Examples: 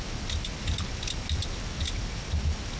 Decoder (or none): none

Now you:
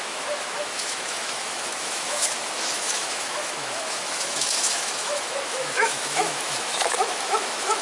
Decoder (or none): autoencoder, DAC-VAE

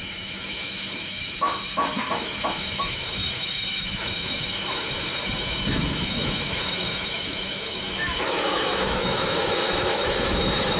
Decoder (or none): autoencoder, DAC-VAE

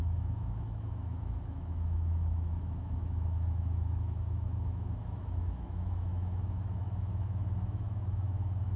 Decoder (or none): autoencoder, DAC-VAE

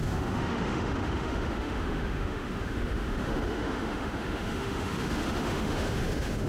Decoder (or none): autoencoder, DAC-VAE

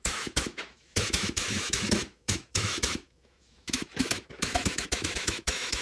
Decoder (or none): autoencoder, DAC-VAE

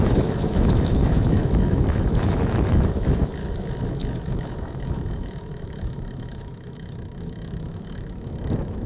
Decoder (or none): autoencoder, DAC-VAE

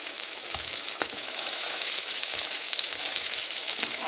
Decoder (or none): autoencoder, DAC-VAE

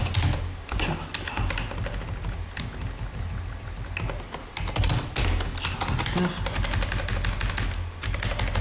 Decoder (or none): none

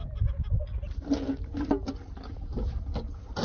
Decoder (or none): none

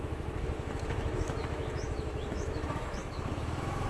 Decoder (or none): autoencoder, DAC-VAE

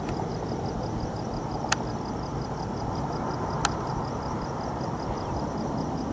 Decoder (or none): none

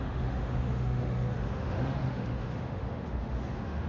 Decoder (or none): autoencoder, DAC-VAE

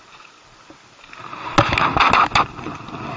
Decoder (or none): none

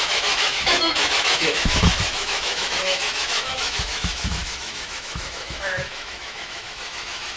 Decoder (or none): autoencoder, DAC-VAE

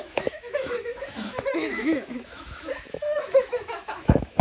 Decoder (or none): autoencoder, DAC-VAE